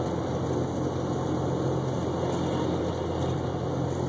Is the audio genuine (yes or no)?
yes